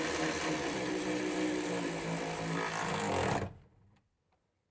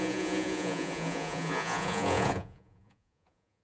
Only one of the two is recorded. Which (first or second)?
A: first